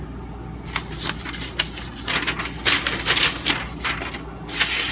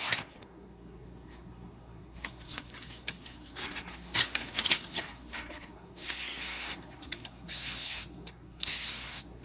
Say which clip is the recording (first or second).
first